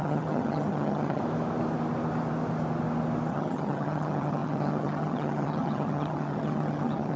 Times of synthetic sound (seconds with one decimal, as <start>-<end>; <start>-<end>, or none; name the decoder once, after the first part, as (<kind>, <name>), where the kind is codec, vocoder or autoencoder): 0.0-1.2 (vocoder, HiFi-GAN); 3.3-7.2